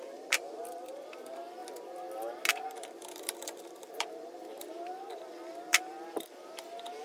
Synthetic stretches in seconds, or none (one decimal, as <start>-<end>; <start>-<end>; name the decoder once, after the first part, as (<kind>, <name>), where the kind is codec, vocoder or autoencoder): 0.0-1.6 (vocoder, BigVGAN v2); 2.5-7.0